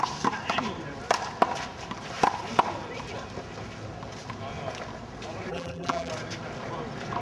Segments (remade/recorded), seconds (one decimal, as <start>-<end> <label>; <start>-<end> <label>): 0.0-5.5 recorded; 5.5-6.1 remade; 6.1-7.2 recorded